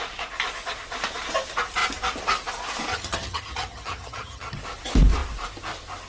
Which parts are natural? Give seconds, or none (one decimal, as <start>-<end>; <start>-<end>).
0.0-2.9; 4.6-6.1